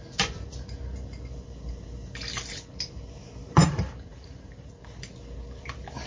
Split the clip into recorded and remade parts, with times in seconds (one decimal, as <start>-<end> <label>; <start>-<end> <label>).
0.0-3.4 recorded; 3.4-4.7 remade; 4.7-6.1 recorded